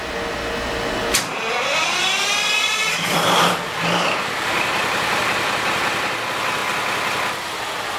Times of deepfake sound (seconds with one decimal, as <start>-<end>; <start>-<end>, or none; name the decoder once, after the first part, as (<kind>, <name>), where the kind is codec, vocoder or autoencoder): 2.0-5.2 (vocoder, BigVGAN v2)